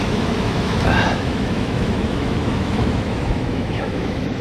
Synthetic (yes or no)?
yes